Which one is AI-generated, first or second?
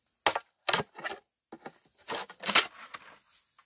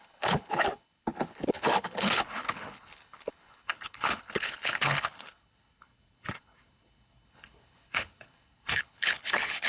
second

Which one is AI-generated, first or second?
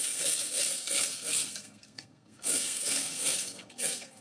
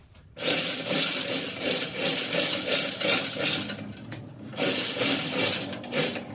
first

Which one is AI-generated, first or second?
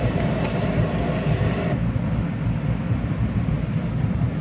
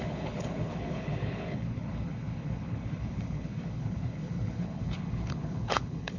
second